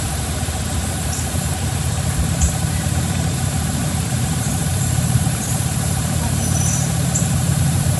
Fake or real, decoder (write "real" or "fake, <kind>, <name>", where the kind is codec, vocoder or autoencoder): fake, vocoder, BigVGAN v2